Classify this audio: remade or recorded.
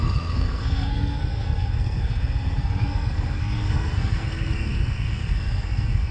remade